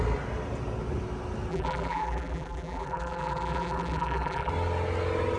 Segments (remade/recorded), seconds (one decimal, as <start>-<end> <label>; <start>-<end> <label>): 0.0-1.5 recorded; 1.5-4.5 remade; 4.5-5.4 recorded